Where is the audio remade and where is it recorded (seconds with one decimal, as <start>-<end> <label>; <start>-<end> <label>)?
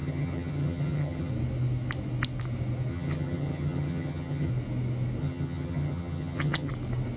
0.0-1.3 remade; 1.3-2.9 recorded; 2.9-4.5 remade; 4.5-5.2 recorded; 5.2-6.7 remade; 6.7-7.2 recorded